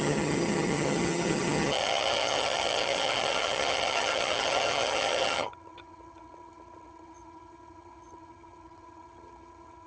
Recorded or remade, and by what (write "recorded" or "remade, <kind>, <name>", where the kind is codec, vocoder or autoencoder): remade, vocoder, HiFi-GAN